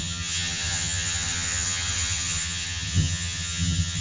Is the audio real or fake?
fake